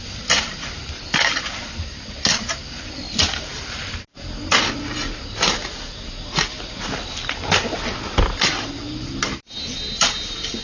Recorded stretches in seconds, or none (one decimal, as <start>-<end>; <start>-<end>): 0.0-10.6